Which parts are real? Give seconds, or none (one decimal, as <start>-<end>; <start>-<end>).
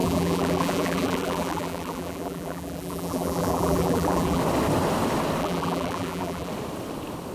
4.4-5.4; 6.5-7.3